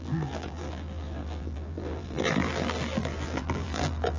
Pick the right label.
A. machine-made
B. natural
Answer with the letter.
A